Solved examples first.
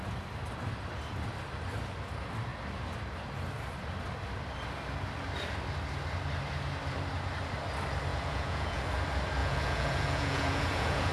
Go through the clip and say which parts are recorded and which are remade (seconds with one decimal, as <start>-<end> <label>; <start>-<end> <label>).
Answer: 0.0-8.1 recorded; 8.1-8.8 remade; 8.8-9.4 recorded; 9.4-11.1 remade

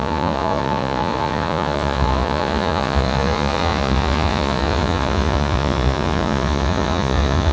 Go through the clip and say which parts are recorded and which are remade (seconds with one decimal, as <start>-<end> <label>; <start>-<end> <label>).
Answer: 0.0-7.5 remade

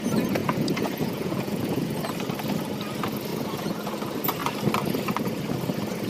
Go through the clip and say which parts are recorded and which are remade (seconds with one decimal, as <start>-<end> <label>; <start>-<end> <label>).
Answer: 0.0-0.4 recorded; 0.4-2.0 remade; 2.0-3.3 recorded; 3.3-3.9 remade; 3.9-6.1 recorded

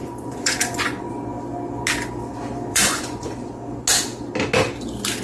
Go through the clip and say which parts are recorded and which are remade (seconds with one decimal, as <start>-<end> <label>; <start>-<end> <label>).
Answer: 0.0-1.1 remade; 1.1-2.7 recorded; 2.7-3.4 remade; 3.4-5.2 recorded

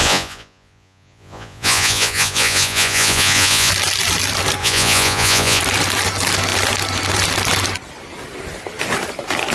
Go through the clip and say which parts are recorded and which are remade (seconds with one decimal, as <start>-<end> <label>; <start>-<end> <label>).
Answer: 0.0-3.7 remade; 3.7-4.6 recorded; 4.6-5.6 remade; 5.6-9.5 recorded

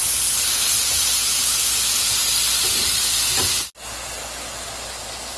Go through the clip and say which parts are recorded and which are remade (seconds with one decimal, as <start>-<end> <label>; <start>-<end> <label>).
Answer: 0.0-0.8 recorded; 0.8-2.2 remade; 2.2-5.4 recorded